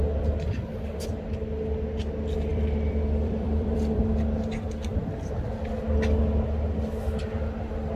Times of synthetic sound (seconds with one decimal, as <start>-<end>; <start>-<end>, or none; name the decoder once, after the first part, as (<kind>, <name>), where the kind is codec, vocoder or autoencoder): 2.5-4.0 (vocoder, BigVGAN v2)